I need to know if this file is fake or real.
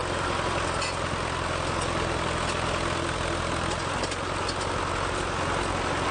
real